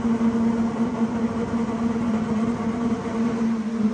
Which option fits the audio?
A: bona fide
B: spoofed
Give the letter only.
A